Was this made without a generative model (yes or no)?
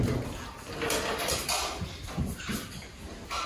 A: yes